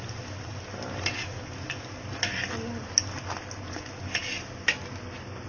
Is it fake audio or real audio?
real